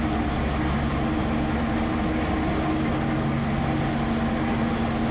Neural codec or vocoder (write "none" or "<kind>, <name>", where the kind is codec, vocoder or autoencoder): none